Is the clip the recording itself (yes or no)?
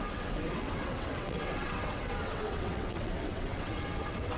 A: no